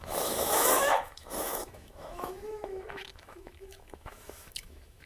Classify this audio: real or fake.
fake